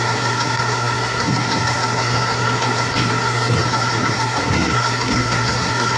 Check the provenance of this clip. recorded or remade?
remade